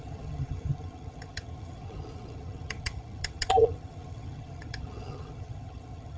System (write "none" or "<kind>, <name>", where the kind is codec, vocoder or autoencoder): vocoder, HiFi-GAN